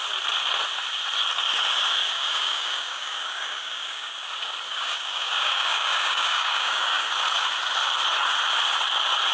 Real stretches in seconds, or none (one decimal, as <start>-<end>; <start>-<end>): 0.0-2.0; 4.1-4.7; 7.1-9.3